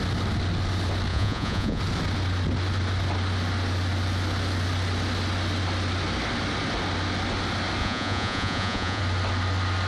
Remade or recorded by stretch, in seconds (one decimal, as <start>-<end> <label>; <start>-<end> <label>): 0.0-1.1 recorded; 1.1-1.8 remade; 1.8-7.8 recorded; 7.8-9.0 remade; 9.0-9.9 recorded

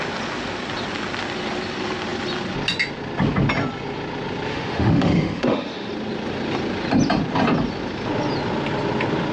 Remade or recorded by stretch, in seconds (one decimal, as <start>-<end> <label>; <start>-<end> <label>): 0.0-4.5 recorded; 4.5-5.9 remade; 5.9-9.3 recorded